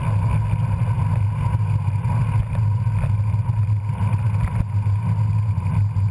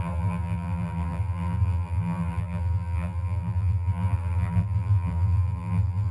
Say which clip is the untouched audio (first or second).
first